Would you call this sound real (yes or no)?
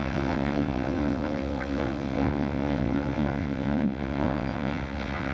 no